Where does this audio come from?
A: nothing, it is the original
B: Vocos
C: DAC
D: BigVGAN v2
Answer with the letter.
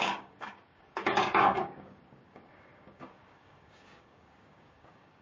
C